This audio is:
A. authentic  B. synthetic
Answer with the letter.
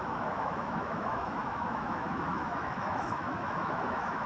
B